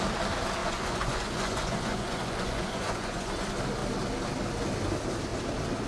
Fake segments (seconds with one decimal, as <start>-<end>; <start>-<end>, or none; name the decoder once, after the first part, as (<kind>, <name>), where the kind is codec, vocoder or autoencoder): 0.6-3.3 (vocoder, Vocos)